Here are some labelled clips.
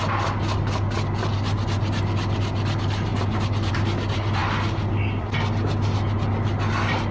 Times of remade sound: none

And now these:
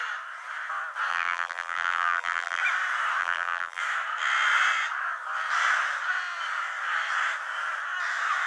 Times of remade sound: 1.1-2.6 (vocoder, BigVGAN v2); 3.2-3.8

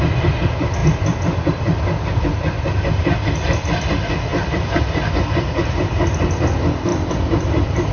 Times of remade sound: 6.9-7.9 (vocoder, BigVGAN v2)

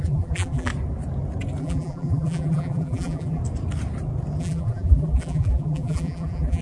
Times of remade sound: 0.0-0.7 (vocoder, BigVGAN v2); 1.6-3.4; 4.4-6.6

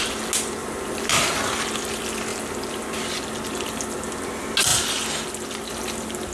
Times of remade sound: 0.6-1.1 (vocoder, BigVGAN v2); 2.3-2.8

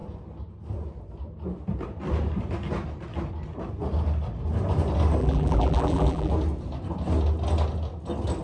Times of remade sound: 5.2-6.3 (vocoder, BigVGAN v2)

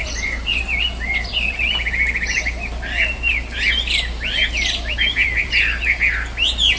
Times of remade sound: 0.0-0.6 (vocoder, BigVGAN v2)